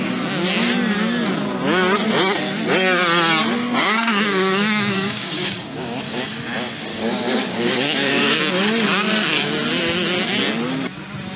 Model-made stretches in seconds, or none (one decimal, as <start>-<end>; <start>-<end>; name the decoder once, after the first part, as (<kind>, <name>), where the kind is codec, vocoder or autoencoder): 3.8-6.0 (codec, DAC); 6.9-8.4